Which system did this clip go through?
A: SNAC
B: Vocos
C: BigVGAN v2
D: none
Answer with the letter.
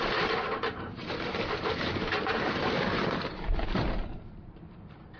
C